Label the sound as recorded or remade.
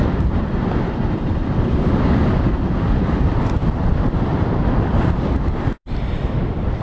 remade